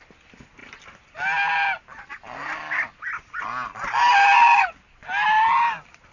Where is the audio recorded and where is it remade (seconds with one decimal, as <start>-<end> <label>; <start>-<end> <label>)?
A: 0.0-6.1 recorded